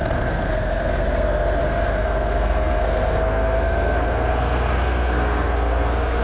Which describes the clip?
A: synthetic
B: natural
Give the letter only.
A